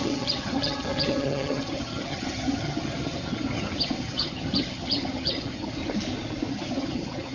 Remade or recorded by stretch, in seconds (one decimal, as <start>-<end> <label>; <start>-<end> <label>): 0.0-5.8 remade; 5.8-6.5 recorded; 6.5-7.3 remade